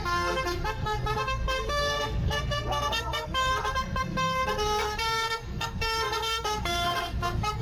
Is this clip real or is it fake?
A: fake